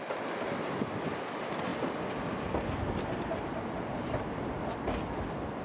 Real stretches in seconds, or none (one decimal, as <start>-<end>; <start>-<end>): 0.0-5.6